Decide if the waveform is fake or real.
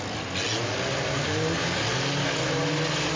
real